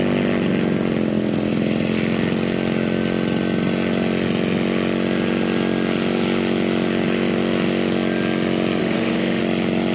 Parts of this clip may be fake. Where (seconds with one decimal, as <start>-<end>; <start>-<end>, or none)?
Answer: 8.8-9.4